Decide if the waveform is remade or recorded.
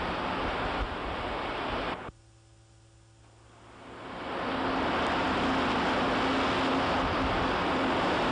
recorded